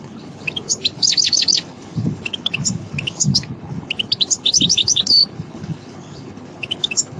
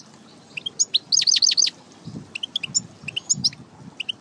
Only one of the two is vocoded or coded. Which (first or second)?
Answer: first